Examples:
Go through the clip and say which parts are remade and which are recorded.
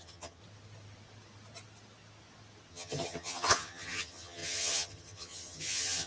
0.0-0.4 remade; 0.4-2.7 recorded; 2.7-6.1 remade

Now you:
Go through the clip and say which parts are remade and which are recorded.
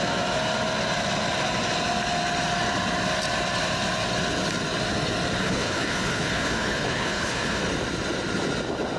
0.0-5.4 recorded; 5.4-7.6 remade; 7.6-9.0 recorded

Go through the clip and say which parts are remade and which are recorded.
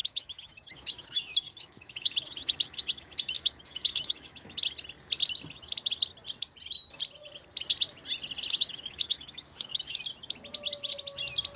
0.0-4.6 remade; 4.6-8.7 recorded; 8.7-10.0 remade; 10.0-11.6 recorded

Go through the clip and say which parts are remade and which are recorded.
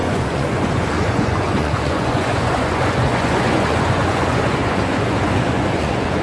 0.0-6.2 remade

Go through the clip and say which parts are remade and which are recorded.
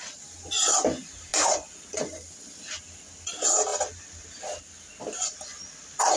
0.0-6.2 recorded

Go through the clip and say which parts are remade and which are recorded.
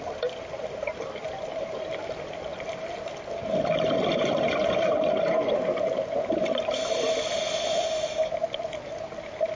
0.0-9.6 recorded